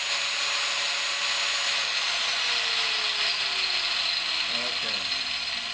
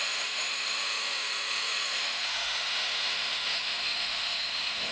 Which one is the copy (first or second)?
second